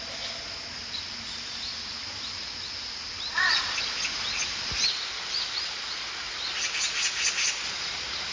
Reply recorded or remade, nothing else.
recorded